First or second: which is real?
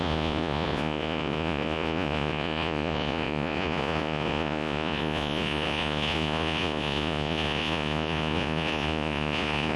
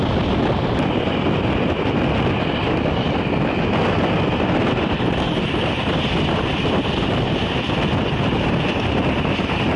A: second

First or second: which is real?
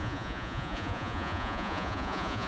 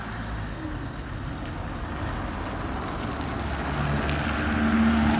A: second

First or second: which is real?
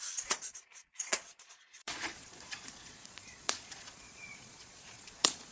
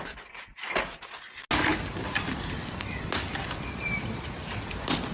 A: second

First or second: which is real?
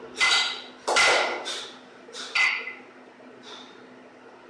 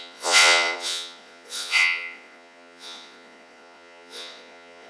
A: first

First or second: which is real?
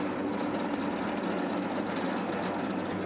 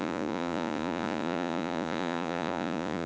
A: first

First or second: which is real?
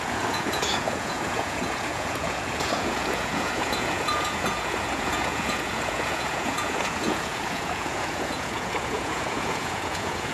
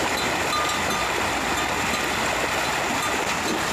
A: second